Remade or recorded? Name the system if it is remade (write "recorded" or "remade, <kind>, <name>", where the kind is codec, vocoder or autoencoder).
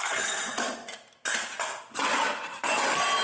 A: recorded